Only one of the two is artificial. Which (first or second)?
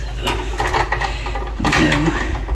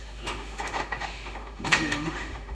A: second